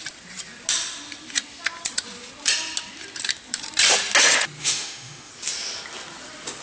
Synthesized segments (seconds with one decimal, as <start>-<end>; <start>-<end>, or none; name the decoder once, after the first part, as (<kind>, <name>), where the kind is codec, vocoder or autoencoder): 4.6-5.3 (autoencoder, DAC-VAE)